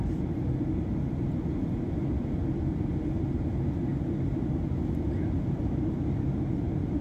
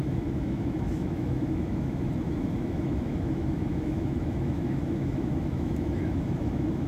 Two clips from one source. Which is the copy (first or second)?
second